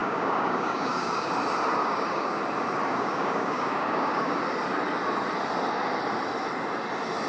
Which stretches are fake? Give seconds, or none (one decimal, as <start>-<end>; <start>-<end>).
0.0-1.3; 1.8-2.4; 2.9-4.4